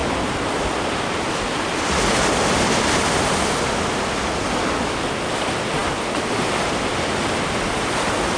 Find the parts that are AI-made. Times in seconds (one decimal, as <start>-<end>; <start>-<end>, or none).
none